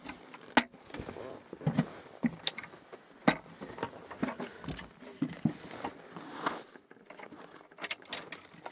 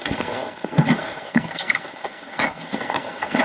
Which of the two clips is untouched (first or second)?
first